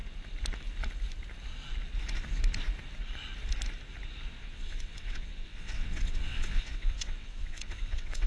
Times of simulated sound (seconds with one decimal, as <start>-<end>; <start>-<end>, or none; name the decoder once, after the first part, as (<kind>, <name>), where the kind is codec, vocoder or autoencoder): 4.4-8.3 (vocoder, WaveNeXt)